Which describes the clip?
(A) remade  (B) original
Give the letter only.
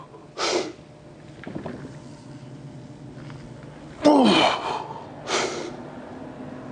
B